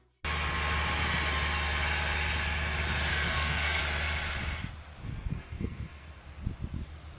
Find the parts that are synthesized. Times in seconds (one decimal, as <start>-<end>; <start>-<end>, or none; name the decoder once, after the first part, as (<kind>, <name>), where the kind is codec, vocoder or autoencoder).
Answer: 3.1-3.8 (codec, SNAC); 5.0-6.2